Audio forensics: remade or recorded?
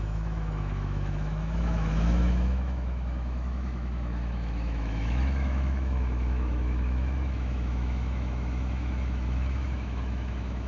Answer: remade